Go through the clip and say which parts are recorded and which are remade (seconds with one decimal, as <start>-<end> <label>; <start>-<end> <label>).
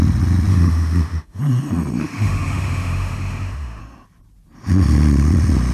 0.0-0.5 recorded; 0.5-1.4 remade; 1.4-2.0 recorded; 2.0-3.8 remade; 3.8-5.7 recorded